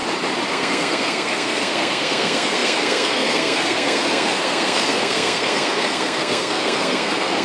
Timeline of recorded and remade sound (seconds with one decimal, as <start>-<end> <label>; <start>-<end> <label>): 0.0-0.5 recorded; 0.5-7.4 remade